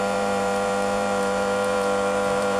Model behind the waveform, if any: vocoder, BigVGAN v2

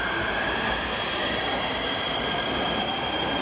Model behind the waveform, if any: vocoder, BigVGAN v2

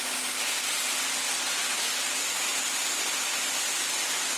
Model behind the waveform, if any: none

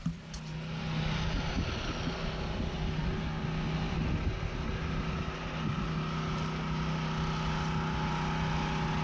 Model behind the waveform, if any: none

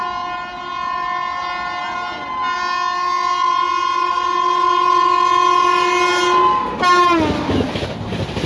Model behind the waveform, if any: none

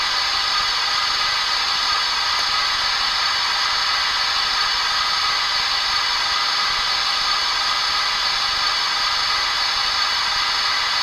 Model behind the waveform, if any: none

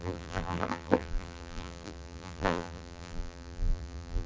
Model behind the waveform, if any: vocoder, BigVGAN v2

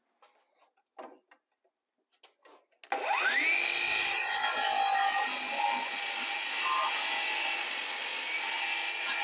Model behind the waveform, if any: none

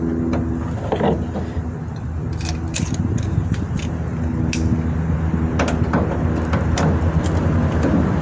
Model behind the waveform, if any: none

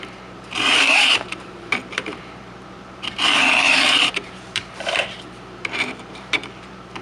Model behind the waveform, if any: vocoder, BigVGAN v2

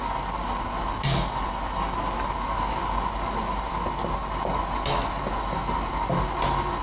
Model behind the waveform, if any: none